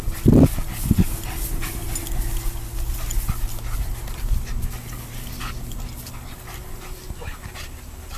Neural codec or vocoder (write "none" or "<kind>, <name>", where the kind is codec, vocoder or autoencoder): none